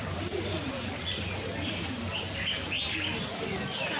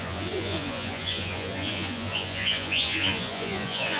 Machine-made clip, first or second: second